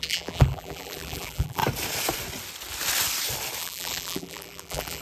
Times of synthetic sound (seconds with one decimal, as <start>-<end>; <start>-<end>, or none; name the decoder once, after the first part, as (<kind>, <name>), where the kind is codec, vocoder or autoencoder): 0.0-1.6 (vocoder, BigVGAN v2); 3.6-5.0